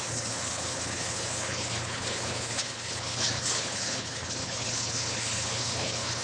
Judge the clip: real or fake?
fake